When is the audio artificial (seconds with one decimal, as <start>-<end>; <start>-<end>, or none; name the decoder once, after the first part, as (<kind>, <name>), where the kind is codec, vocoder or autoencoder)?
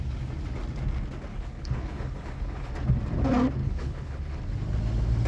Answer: 1.3-2.7 (codec, HILCodec); 3.6-4.4